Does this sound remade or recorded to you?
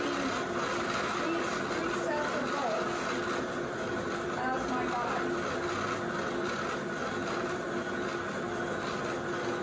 recorded